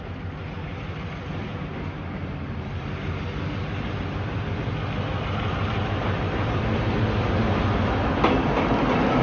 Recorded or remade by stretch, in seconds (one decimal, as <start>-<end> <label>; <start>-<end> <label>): 0.0-9.2 recorded